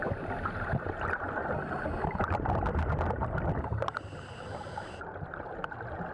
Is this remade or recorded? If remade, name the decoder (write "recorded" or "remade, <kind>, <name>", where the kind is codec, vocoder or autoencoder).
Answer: recorded